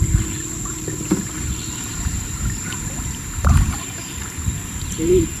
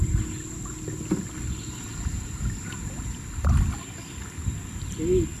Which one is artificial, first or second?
first